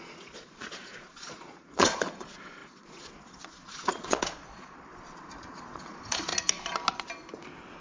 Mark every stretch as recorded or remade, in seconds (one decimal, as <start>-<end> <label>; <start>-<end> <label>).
0.0-6.3 remade; 6.3-7.8 recorded